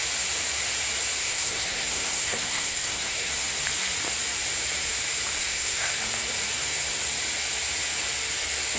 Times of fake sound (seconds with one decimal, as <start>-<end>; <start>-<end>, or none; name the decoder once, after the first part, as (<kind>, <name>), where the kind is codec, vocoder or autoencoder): 1.2-3.3 (codec, SNAC); 5.4-6.0